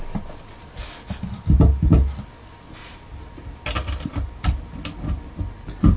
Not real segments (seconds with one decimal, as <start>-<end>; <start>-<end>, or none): none